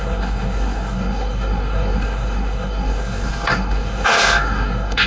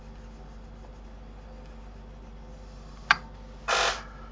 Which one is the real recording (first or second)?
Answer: second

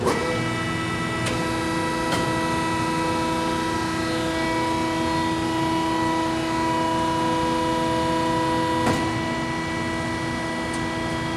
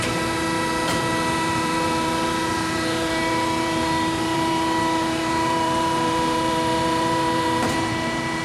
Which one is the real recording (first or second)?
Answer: first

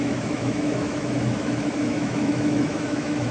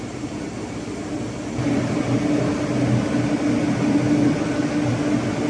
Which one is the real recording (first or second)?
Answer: second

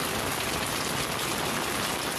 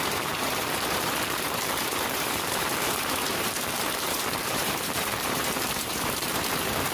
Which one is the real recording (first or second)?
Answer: first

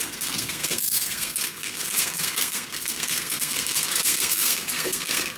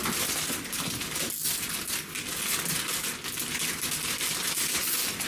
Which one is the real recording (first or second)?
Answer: second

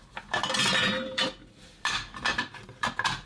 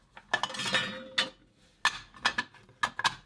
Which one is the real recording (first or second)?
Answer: second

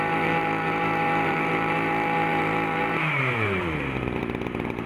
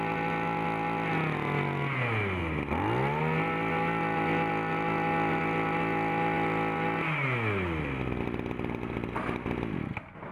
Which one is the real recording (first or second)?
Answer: second